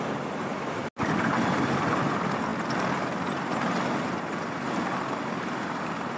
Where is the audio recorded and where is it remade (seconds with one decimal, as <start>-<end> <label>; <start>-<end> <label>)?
0.0-6.2 recorded